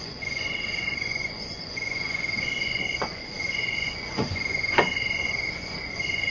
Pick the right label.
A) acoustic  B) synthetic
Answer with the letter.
B